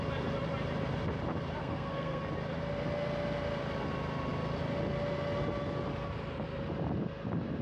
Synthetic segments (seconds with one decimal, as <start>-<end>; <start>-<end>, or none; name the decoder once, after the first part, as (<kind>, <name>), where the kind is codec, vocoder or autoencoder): 1.6-2.2 (codec, SNAC)